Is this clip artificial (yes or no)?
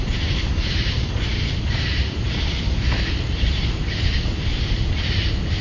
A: yes